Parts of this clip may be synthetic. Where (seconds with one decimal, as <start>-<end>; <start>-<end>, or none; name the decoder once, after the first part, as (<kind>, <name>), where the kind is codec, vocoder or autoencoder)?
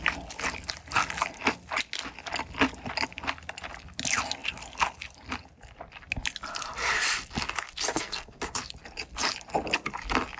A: 7.9-8.4 (codec, SNAC)